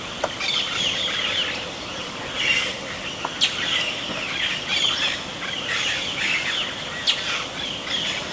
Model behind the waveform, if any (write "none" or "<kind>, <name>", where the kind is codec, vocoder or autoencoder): none